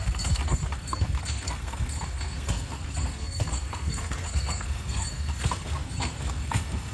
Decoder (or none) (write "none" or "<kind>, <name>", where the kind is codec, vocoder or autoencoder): codec, SNAC